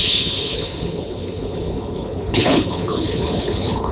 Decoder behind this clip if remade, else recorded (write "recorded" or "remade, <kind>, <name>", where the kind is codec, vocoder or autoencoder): remade, codec, HILCodec